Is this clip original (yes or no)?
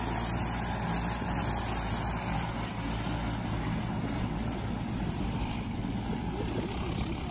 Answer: yes